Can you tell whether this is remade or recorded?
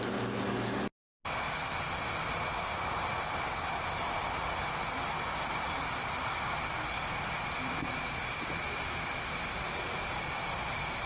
recorded